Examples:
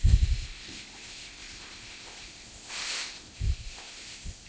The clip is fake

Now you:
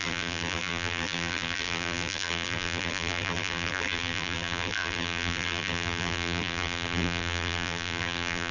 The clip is fake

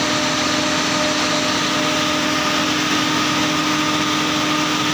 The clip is real